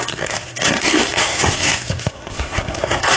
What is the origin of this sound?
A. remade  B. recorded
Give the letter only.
A